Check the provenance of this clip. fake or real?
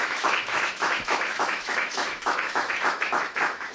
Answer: fake